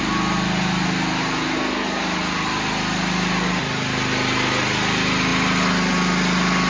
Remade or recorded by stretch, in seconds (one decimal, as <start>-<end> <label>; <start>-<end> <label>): 0.0-6.7 recorded